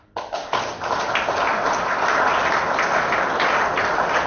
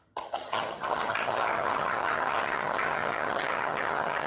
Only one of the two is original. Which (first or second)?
first